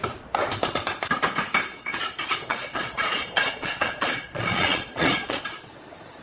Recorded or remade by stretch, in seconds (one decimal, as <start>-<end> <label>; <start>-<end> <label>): 0.0-1.7 recorded; 1.7-5.4 remade; 5.4-6.2 recorded